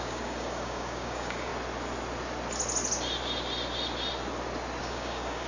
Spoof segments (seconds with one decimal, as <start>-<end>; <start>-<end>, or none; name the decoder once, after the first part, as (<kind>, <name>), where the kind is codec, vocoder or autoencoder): 0.0-1.5 (codec, DAC); 4.8-5.5